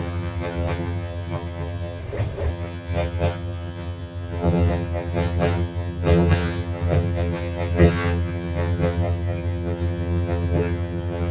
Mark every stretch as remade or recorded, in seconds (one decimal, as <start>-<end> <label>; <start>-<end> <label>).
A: 0.0-2.0 remade; 2.0-2.5 recorded; 2.5-11.3 remade